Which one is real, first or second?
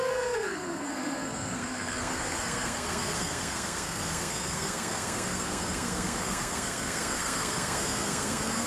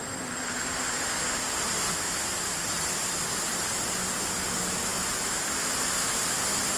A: second